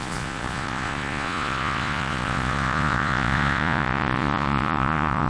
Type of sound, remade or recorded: remade